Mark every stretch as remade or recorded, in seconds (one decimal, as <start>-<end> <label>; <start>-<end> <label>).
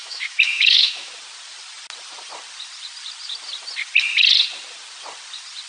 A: 0.0-1.1 remade; 1.1-5.7 recorded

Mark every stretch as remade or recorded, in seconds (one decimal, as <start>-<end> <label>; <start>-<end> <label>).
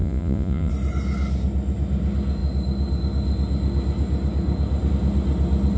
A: 0.0-0.7 remade; 0.7-5.8 recorded